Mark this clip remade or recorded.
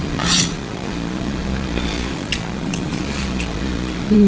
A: remade